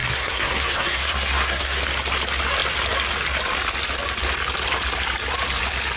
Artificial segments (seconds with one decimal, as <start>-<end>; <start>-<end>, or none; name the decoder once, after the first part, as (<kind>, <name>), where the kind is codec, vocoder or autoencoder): 0.0-1.8 (codec, SNAC)